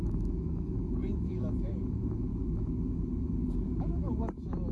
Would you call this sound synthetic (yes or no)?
yes